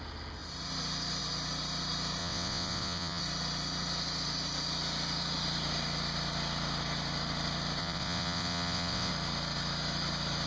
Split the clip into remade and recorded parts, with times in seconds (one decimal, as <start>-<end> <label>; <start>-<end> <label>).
0.0-2.2 recorded; 2.2-3.2 remade; 3.2-7.8 recorded; 7.8-9.1 remade; 9.1-10.5 recorded